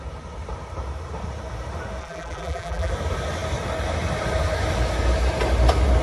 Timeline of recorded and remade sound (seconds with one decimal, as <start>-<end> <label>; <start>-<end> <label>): 0.0-2.0 recorded; 2.0-2.9 remade; 2.9-6.0 recorded